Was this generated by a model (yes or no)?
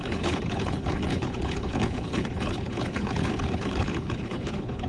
yes